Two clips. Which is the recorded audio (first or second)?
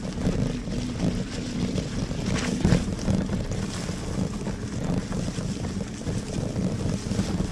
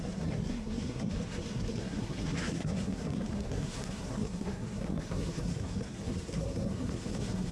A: first